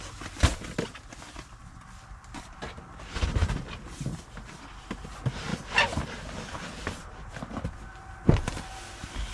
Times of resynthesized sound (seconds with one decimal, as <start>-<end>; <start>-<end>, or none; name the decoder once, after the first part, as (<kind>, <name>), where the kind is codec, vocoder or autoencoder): 0.5-1.6 (vocoder, BigVGAN v2); 5.5-7.3